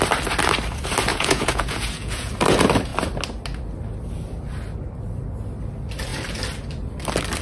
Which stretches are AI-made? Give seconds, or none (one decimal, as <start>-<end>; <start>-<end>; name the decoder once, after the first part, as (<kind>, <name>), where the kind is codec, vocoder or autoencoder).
1.1-2.3 (vocoder, Vocos)